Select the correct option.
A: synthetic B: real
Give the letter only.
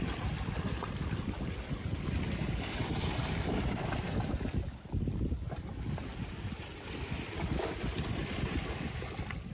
B